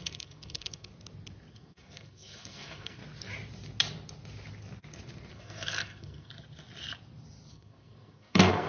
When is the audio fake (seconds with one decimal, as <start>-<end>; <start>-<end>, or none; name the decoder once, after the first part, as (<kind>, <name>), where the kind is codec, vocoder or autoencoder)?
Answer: 0.0-0.9 (codec, SNAC); 1.5-3.0; 5.3-6.3; 7.5-8.7

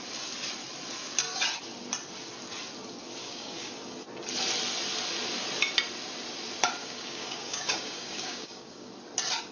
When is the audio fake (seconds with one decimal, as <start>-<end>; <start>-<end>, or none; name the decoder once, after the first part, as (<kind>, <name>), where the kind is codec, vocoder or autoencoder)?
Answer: 3.2-3.7 (codec, DAC); 6.8-8.9

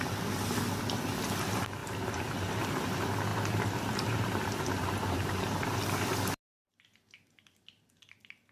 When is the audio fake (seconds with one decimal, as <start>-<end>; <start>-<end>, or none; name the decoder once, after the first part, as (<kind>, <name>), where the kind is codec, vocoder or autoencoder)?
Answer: 1.8-2.6 (vocoder, BigVGAN v2); 3.3-5.8

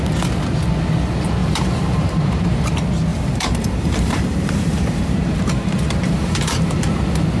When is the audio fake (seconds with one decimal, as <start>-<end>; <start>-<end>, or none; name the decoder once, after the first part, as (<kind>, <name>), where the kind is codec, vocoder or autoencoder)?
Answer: 1.4-2.7 (vocoder, BigVGAN v2); 3.1-6.9

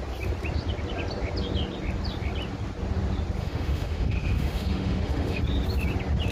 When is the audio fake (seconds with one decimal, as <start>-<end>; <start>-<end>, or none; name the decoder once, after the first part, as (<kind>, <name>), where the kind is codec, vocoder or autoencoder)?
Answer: 3.4-5.4 (autoencoder, DAC-VAE)

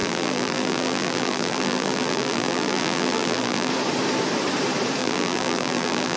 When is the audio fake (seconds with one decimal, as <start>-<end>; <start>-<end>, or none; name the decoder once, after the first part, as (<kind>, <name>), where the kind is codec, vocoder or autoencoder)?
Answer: 0.0-3.7 (vocoder, BigVGAN v2); 5.0-6.2

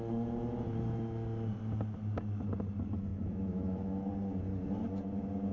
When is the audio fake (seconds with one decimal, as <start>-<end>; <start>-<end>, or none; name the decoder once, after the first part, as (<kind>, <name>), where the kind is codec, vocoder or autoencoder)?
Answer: 3.1-4.1 (autoencoder, DAC-VAE)

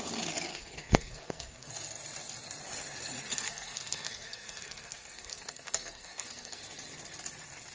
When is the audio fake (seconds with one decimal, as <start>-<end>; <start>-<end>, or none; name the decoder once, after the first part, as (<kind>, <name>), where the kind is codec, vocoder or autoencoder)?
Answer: 0.5-1.7 (codec, SNAC); 3.3-6.6